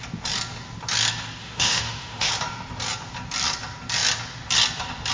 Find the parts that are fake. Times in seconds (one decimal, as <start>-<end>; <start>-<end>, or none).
1.4-2.3